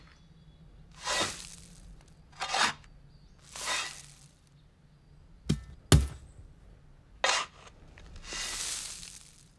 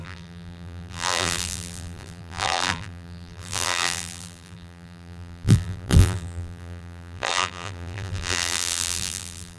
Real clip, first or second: first